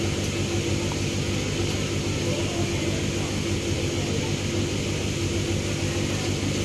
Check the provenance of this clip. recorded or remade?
recorded